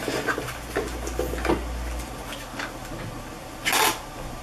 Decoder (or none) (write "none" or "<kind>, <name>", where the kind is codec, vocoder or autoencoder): none